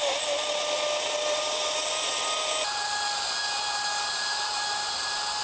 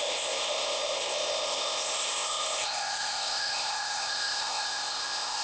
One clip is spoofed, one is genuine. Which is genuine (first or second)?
first